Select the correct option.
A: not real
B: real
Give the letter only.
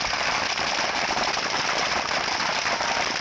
A